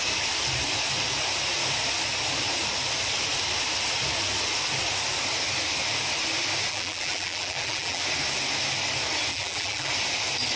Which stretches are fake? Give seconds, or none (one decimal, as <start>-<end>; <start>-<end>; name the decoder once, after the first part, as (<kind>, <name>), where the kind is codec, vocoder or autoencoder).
6.7-8.0 (vocoder, BigVGAN v2); 9.3-9.9